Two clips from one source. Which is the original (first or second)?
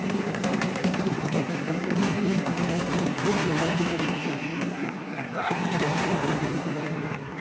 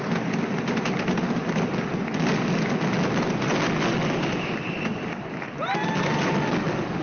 second